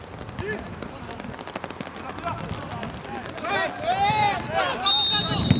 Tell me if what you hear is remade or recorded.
recorded